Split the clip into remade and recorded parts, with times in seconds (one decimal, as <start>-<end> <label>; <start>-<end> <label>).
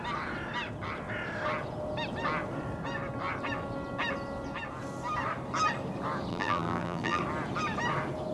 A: 0.0-6.3 recorded; 6.3-7.2 remade; 7.2-8.3 recorded